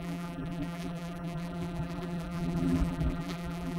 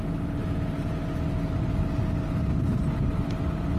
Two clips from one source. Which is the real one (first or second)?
second